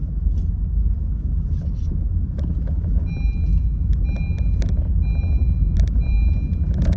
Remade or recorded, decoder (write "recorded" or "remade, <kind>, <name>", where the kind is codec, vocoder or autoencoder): recorded